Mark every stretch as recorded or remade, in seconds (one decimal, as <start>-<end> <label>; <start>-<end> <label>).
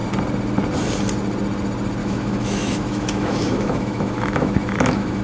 0.0-2.0 recorded; 2.0-5.2 remade